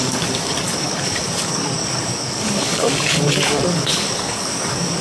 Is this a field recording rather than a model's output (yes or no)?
no